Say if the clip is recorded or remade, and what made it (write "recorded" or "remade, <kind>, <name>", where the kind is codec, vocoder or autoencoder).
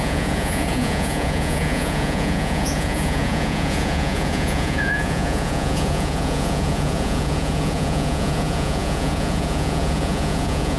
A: remade, vocoder, Vocos